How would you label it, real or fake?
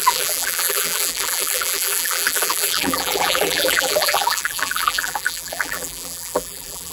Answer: fake